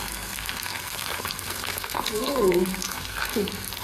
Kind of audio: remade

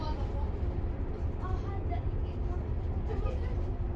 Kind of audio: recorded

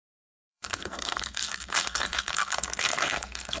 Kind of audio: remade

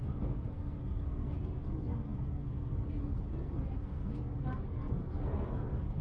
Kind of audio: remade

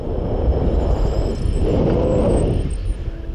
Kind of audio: recorded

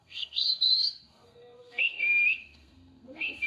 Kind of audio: remade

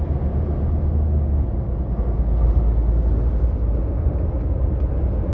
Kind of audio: recorded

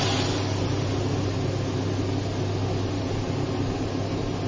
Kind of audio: recorded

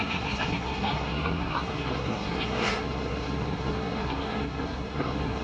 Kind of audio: remade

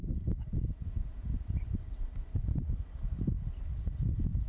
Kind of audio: recorded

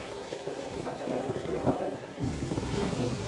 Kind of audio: remade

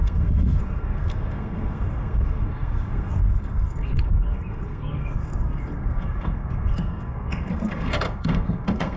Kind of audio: remade